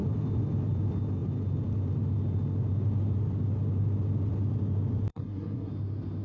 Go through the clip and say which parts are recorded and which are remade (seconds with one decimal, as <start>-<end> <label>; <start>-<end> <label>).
0.0-5.1 recorded; 5.1-5.7 remade; 5.7-6.2 recorded

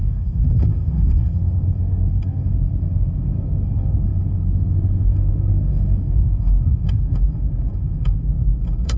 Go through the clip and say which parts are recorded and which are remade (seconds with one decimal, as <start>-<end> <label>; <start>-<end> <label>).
0.0-9.0 remade

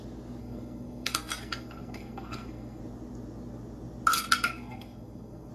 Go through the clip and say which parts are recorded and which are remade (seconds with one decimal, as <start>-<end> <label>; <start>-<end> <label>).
0.0-0.4 recorded; 0.4-2.8 remade; 2.8-4.1 recorded; 4.1-5.5 remade